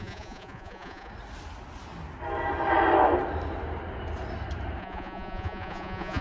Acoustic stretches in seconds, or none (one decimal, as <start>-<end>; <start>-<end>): 1.1-4.8